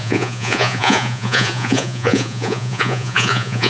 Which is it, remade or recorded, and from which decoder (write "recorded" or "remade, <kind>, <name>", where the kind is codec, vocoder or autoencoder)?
remade, vocoder, Vocos